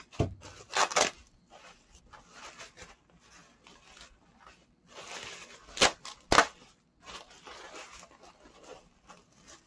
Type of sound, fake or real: real